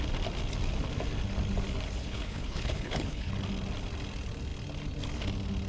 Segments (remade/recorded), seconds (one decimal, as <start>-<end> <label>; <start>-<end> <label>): 0.0-2.0 recorded; 2.0-3.3 remade; 3.3-5.7 recorded